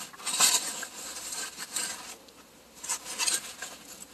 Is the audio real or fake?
real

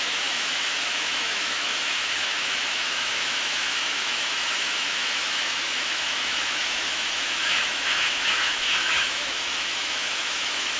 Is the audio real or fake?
fake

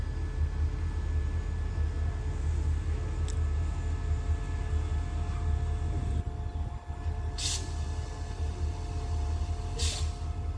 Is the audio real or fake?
real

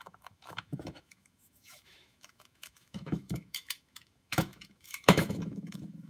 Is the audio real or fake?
fake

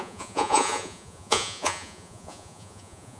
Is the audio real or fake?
fake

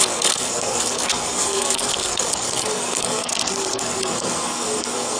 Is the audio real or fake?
fake